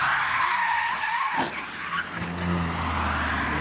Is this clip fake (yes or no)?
no